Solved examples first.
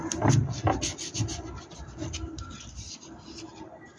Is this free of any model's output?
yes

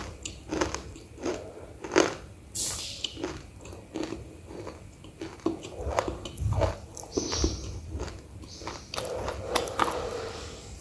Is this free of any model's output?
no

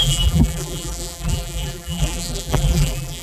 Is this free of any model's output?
no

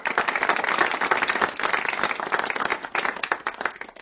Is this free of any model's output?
yes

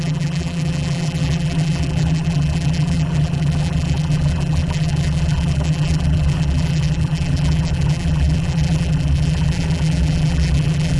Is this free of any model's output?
no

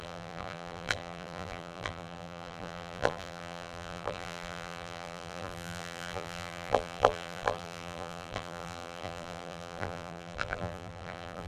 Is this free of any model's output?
no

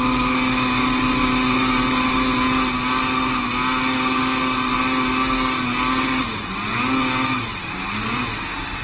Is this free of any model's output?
yes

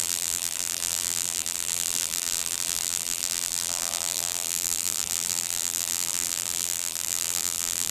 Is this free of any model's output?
no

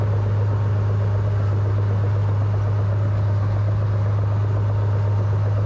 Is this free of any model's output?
yes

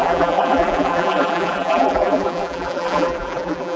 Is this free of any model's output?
no